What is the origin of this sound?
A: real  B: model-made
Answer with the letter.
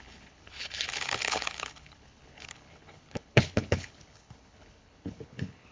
B